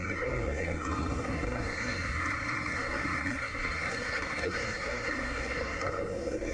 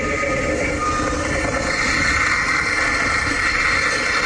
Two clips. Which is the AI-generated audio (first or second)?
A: first